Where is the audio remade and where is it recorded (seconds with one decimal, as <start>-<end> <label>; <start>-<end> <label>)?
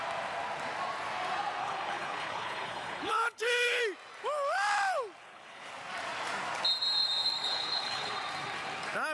0.0-1.6 recorded; 1.6-3.8 remade; 3.8-5.2 recorded; 5.2-5.7 remade; 5.7-7.4 recorded; 7.4-8.1 remade; 8.1-9.1 recorded